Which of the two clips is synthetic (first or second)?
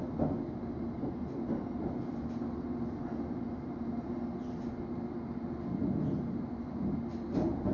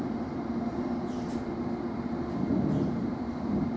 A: second